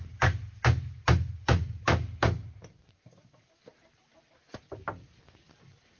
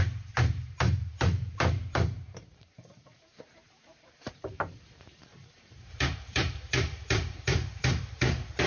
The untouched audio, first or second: first